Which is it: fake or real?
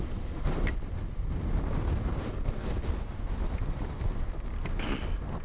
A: real